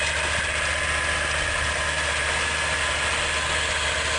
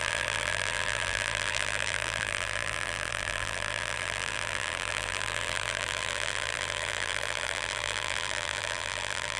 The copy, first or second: second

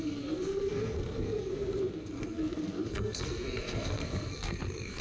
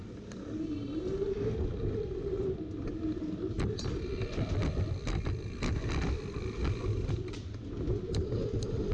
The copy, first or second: first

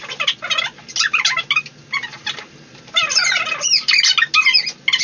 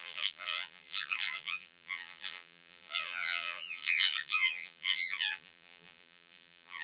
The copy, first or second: second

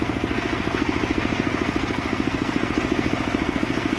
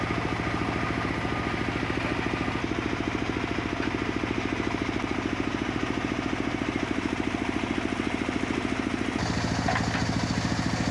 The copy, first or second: first